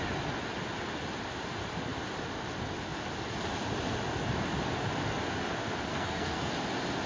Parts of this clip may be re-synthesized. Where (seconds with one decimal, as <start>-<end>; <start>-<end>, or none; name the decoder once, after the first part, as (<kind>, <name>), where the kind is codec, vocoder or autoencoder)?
5.9-6.5 (codec, SNAC)